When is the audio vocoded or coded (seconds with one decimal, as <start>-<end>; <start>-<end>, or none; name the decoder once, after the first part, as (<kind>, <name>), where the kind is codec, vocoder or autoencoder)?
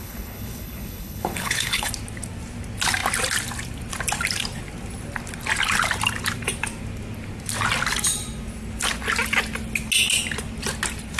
0.0-1.9 (codec, HILCodec)